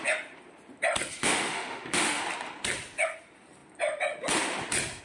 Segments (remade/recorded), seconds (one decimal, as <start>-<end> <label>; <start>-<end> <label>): 0.0-1.2 recorded; 1.2-2.2 remade; 2.2-5.0 recorded